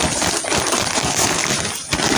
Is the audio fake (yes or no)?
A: no